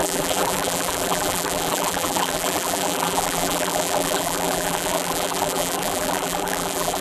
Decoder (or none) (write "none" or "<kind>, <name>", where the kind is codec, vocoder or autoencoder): vocoder, BigVGAN v2